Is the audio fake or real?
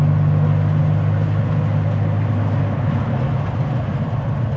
real